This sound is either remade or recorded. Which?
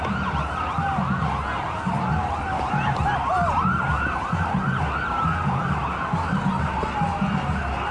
recorded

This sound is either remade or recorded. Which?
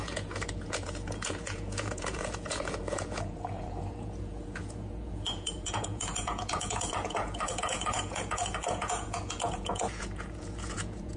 remade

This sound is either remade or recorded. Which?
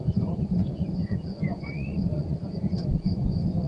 remade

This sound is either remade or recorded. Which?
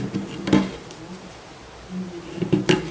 recorded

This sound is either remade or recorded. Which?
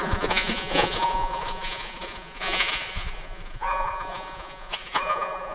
remade